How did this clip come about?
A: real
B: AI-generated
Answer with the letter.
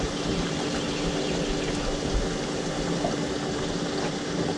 A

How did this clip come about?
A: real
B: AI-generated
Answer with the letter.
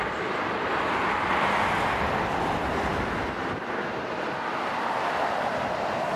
A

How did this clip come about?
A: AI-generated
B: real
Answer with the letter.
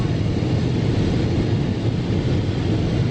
B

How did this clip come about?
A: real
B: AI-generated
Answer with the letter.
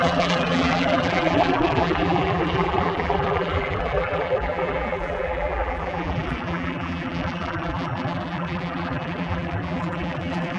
B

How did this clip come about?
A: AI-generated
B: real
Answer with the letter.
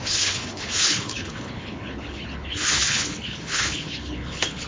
A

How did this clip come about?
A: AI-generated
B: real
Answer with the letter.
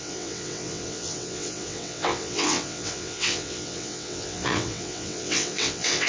A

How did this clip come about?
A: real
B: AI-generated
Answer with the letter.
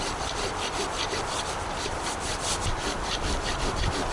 B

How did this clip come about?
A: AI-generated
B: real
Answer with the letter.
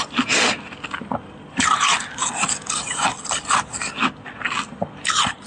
B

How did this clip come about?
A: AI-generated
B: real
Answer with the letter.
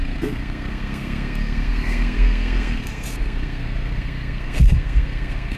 A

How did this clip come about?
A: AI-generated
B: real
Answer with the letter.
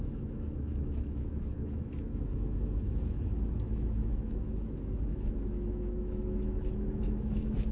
A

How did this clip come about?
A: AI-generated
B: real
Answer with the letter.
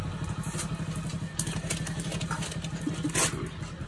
B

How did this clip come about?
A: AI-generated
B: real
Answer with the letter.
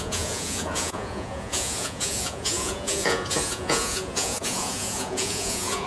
A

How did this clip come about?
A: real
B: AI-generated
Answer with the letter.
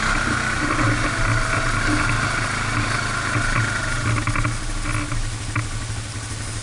A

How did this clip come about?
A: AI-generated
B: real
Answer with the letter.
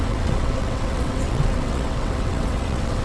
A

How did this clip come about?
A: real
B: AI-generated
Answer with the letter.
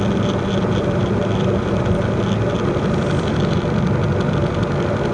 A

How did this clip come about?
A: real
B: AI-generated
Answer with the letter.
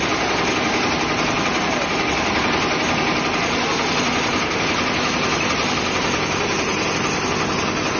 A